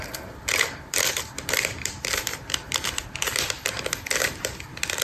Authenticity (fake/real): fake